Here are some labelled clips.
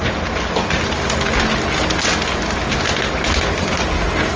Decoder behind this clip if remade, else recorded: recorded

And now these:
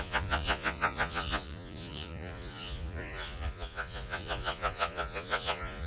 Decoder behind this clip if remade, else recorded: remade, vocoder, Vocos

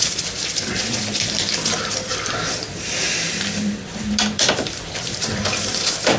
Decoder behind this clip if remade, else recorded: remade, vocoder, BigVGAN v2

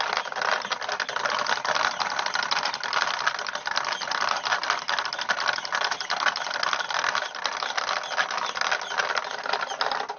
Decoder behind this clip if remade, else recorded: recorded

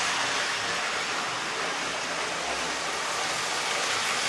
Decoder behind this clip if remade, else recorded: recorded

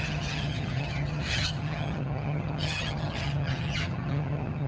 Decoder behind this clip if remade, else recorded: remade, vocoder, HiFi-GAN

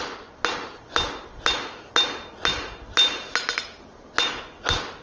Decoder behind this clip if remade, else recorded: recorded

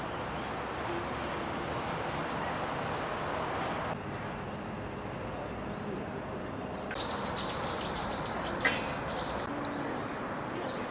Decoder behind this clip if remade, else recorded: recorded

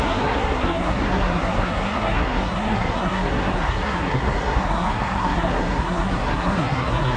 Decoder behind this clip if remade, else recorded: remade, codec, SNAC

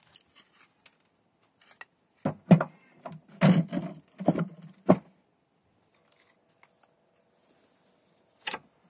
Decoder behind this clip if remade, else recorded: recorded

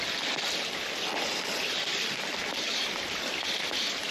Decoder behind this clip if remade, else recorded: recorded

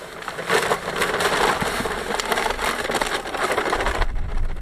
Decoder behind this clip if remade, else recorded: recorded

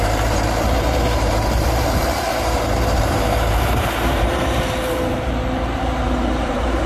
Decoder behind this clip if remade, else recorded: remade, vocoder, BigVGAN v2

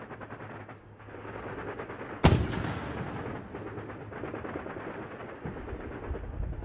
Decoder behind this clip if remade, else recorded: recorded